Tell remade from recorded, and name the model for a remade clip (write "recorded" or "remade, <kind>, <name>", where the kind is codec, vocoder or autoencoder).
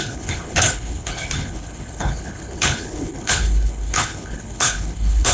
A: remade, codec, HILCodec